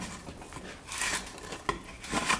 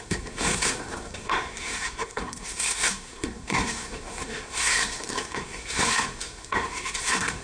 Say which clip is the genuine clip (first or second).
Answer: first